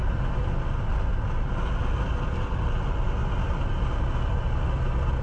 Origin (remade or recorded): recorded